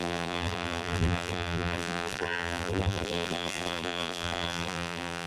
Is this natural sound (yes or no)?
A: no